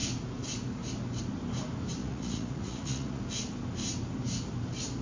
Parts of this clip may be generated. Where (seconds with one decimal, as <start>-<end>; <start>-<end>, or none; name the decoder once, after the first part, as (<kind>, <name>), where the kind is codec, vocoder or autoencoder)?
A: 2.0-3.2 (vocoder, Vocos)